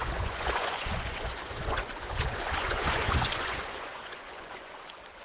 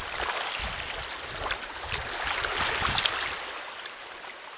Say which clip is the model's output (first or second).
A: first